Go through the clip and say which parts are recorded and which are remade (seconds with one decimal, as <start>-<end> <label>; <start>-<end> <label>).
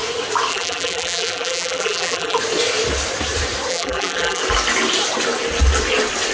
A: 0.0-0.5 recorded; 0.5-2.4 remade; 2.4-3.7 recorded; 3.7-4.4 remade; 4.4-6.3 recorded